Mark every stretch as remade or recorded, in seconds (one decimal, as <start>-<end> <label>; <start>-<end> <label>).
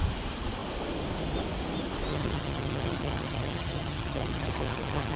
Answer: 0.0-2.1 recorded; 2.1-5.2 remade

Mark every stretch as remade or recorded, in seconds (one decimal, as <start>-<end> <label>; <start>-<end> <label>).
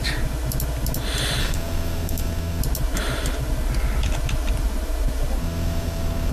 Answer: 0.0-1.4 recorded; 1.4-2.6 remade; 2.6-5.4 recorded; 5.4-6.3 remade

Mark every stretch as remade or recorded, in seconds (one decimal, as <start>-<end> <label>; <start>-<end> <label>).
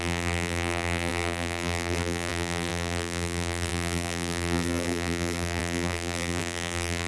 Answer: 0.0-7.1 remade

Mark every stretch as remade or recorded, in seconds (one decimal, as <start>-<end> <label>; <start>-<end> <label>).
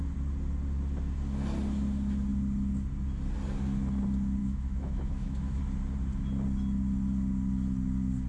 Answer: 0.0-4.4 recorded; 4.4-5.6 remade; 5.6-8.3 recorded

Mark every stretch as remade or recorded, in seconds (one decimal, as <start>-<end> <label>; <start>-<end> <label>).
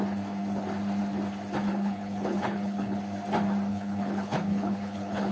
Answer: 0.0-1.7 recorded; 1.7-3.0 remade; 3.0-3.7 recorded; 3.7-5.3 remade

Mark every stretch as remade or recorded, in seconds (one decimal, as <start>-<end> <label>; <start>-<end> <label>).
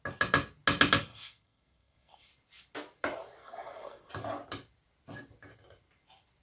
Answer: 0.0-1.0 recorded; 1.0-2.3 remade; 2.3-3.4 recorded; 3.4-4.1 remade; 4.1-6.4 recorded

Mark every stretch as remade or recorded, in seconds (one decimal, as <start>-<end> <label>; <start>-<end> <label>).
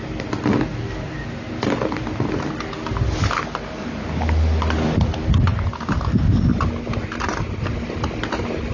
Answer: 0.0-8.7 recorded